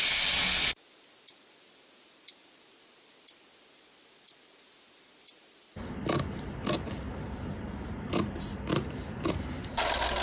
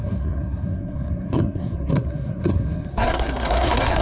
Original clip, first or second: first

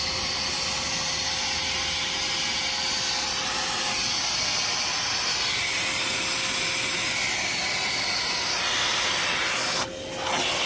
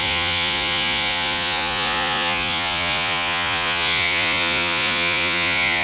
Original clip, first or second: first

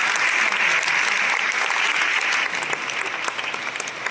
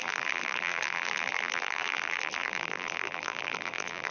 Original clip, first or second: first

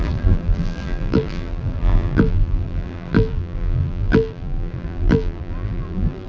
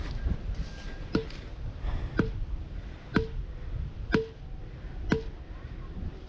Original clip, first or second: second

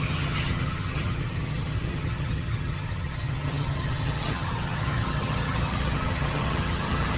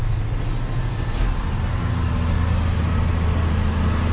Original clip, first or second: second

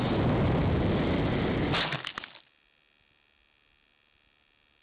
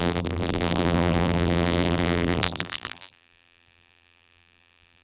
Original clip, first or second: first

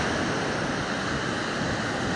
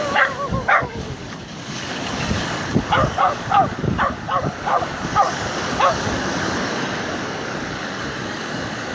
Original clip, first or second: first